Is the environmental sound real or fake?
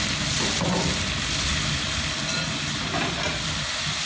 real